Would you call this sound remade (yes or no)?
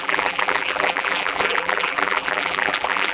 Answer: yes